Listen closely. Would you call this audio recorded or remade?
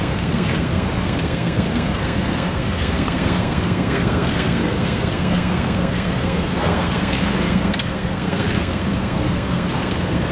remade